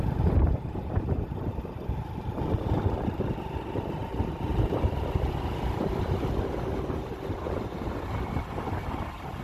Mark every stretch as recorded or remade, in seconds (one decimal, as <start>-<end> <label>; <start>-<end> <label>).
0.0-9.4 recorded